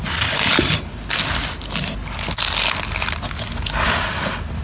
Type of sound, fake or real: real